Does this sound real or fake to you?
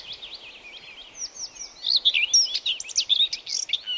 real